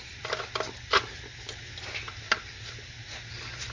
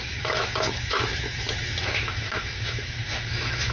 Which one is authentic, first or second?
first